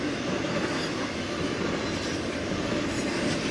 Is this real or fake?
real